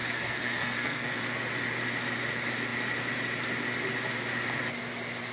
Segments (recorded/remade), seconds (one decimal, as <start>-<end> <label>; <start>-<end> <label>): 0.0-1.2 remade; 1.2-5.3 recorded